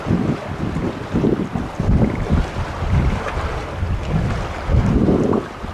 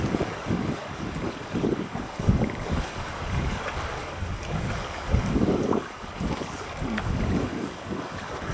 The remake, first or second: second